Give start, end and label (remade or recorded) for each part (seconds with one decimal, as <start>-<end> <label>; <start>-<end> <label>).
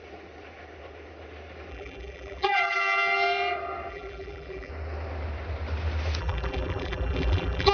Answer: 0.0-1.7 recorded; 1.7-2.8 remade; 2.8-3.9 recorded; 3.9-4.7 remade; 4.7-6.2 recorded; 6.2-7.7 remade